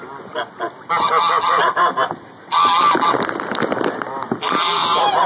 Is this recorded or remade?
recorded